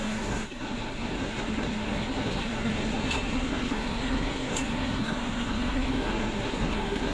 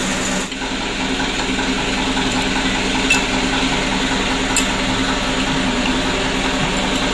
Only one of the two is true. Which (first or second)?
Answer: second